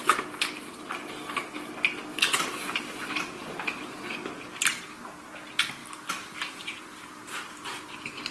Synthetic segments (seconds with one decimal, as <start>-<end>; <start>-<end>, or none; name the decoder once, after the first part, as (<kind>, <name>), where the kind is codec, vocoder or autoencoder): 2.1-2.7 (vocoder, BigVGAN v2); 5.8-7.3